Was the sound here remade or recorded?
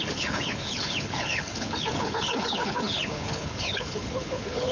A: remade